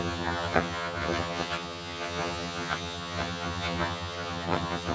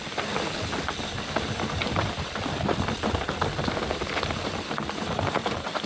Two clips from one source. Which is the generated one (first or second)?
first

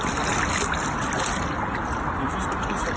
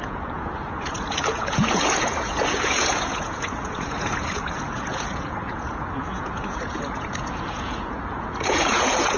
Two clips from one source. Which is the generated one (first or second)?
second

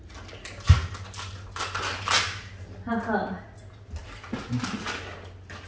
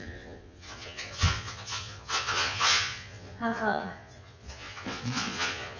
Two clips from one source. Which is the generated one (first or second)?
second